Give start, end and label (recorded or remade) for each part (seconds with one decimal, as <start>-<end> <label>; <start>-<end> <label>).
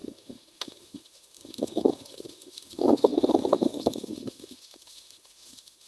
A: 0.0-5.9 remade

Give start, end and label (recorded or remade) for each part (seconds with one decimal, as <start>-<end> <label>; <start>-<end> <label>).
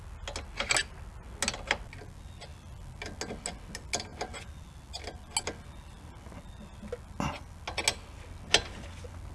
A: 0.0-9.3 recorded